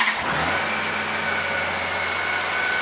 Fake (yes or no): no